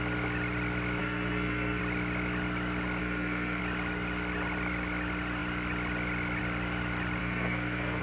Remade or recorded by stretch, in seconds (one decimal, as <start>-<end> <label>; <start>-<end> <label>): 0.0-1.0 recorded; 1.0-1.8 remade; 1.8-3.0 recorded; 3.0-3.6 remade; 3.6-7.2 recorded; 7.2-8.0 remade